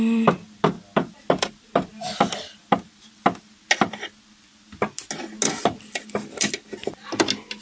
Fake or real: real